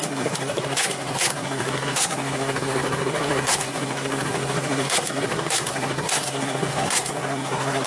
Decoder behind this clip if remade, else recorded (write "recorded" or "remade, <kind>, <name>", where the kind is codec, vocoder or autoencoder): remade, codec, SNAC